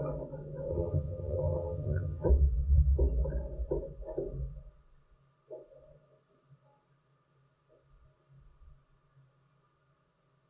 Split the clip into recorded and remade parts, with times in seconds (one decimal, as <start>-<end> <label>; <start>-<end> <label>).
0.0-0.7 recorded; 0.7-2.3 remade; 2.3-10.5 recorded